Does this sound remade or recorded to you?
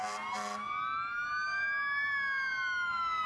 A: recorded